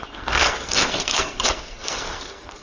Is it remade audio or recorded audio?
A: remade